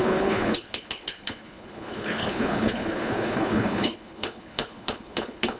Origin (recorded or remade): remade